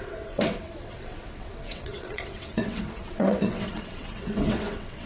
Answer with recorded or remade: remade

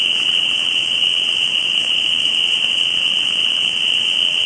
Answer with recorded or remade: remade